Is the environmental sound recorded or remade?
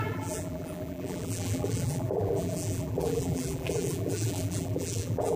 remade